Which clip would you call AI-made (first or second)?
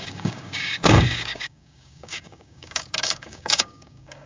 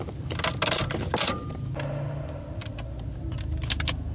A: first